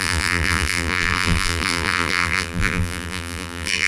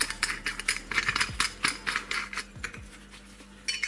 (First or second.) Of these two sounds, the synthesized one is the first